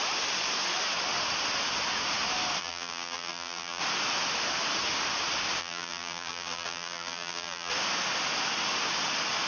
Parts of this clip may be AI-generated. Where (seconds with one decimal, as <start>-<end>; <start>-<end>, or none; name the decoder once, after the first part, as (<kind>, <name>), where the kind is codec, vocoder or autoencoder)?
2.6-3.8 (vocoder, BigVGAN v2); 5.6-7.7